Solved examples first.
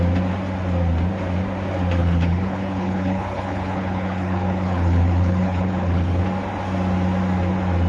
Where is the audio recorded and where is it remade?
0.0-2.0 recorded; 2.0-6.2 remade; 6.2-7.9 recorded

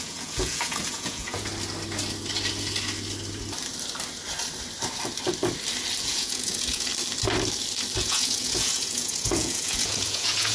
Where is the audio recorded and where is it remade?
0.0-1.5 remade; 1.5-6.0 recorded; 6.0-6.9 remade; 6.9-8.0 recorded; 8.0-10.5 remade

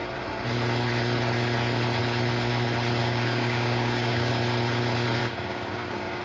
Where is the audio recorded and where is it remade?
0.0-3.0 recorded; 3.0-4.3 remade; 4.3-5.2 recorded; 5.2-6.2 remade

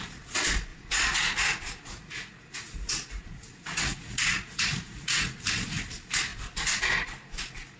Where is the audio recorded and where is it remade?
0.0-0.7 recorded; 0.7-5.4 remade; 5.4-7.8 recorded

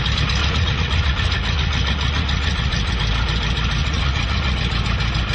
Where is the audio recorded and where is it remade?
0.0-0.4 recorded; 0.4-2.9 remade; 2.9-3.8 recorded; 3.8-4.6 remade; 4.6-5.3 recorded